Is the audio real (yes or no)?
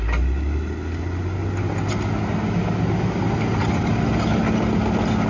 yes